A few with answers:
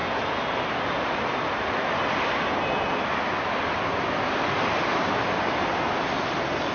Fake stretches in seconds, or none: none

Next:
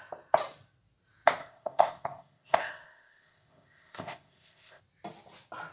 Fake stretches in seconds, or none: 1.4-4.8 (codec, ZipCodec)

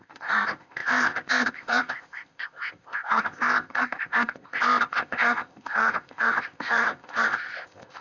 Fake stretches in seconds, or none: 0.0-8.0 (codec, ZipCodec)

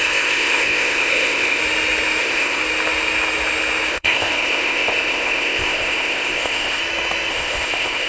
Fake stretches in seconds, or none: 0.0-1.6 (codec, ZipCodec); 2.2-2.6; 3.9-6.8; 7.3-8.1

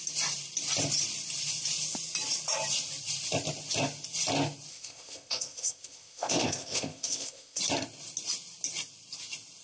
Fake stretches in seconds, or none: 4.7-7.6 (codec, ZipCodec)